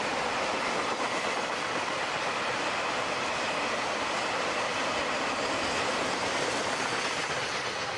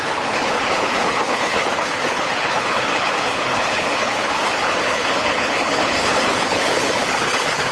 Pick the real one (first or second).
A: first